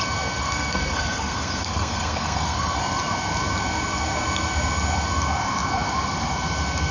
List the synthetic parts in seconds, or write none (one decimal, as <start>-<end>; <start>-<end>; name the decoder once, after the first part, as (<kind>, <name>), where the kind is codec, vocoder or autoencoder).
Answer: 0.4-2.8 (codec, SNAC)